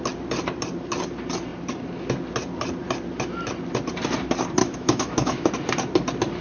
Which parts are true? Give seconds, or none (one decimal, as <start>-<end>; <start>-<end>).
0.0-4.6; 5.5-6.4

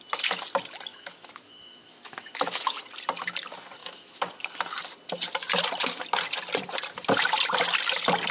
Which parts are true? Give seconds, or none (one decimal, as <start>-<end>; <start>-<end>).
0.0-0.9; 2.8-3.8; 4.3-8.3

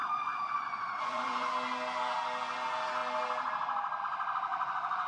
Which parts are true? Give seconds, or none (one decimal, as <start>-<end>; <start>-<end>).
1.5-4.5

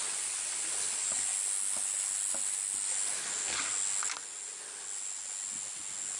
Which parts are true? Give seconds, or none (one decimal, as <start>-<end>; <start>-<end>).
0.0-6.2

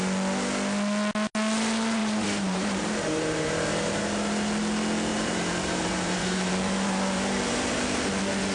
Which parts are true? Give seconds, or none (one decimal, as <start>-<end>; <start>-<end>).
0.0-2.0; 4.0-5.1; 8.1-8.5